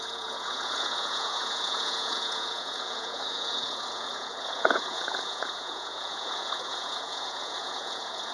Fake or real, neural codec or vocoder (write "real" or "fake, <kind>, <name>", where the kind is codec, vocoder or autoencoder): fake, vocoder, Vocos